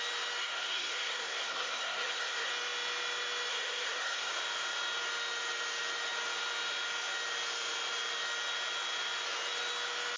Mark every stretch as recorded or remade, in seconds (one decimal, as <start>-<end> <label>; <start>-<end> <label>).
0.0-0.4 recorded; 0.4-2.5 remade; 2.5-3.5 recorded; 3.5-4.3 remade; 4.3-10.2 recorded